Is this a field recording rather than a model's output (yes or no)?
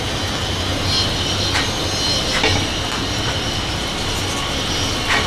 yes